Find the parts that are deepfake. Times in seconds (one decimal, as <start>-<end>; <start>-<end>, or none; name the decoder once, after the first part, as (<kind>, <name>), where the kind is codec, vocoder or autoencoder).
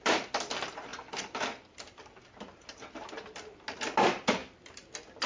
0.9-2.3 (vocoder, BigVGAN v2)